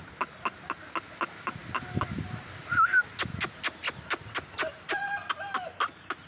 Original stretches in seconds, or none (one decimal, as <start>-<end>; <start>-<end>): 0.0-6.3